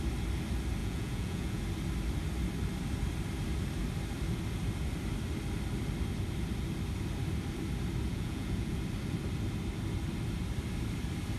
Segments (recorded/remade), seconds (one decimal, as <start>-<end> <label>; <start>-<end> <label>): 0.0-0.8 recorded; 0.8-1.6 remade; 1.6-8.1 recorded; 8.1-8.8 remade; 8.8-11.4 recorded

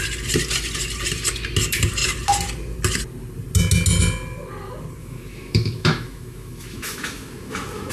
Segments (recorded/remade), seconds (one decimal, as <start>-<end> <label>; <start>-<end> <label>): 0.0-5.0 recorded; 5.0-7.9 remade

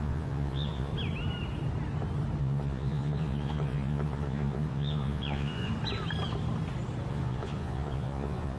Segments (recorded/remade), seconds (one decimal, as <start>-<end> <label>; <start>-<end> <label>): 0.0-0.9 remade; 0.9-2.4 recorded; 2.4-5.7 remade; 5.7-7.1 recorded; 7.1-8.6 remade

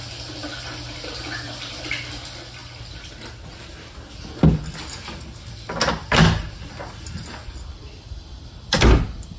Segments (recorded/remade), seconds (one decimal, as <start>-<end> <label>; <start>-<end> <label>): 0.0-9.4 recorded